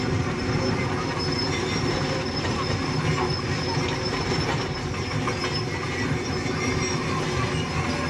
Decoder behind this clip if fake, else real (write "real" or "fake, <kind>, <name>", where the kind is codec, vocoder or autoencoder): real